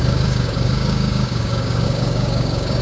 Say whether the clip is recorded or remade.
remade